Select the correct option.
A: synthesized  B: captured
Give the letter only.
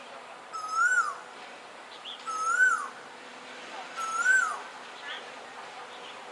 A